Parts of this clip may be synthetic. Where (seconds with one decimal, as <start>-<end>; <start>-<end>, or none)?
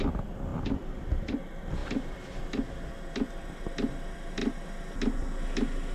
0.5-1.4